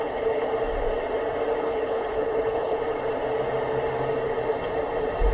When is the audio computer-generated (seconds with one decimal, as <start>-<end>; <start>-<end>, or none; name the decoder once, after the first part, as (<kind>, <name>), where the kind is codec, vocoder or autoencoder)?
0.0-0.5 (codec, HILCodec); 1.6-2.8